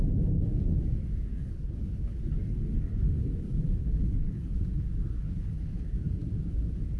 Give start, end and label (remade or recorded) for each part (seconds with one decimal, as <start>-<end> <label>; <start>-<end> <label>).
0.0-1.3 recorded; 1.3-4.6 remade; 4.6-5.2 recorded; 5.2-5.8 remade; 5.8-7.0 recorded